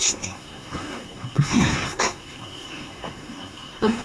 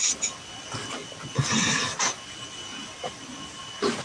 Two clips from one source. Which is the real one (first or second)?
second